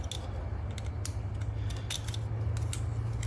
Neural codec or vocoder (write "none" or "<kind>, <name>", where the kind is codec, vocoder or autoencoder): none